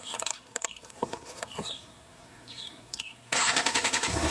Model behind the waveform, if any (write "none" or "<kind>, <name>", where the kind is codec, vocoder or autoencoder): codec, SNAC